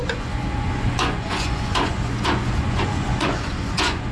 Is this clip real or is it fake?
fake